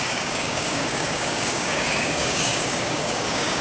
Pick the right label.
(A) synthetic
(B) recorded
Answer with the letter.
A